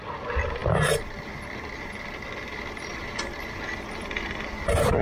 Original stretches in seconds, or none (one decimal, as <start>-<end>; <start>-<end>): 0.0-5.0